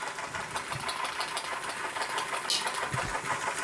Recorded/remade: recorded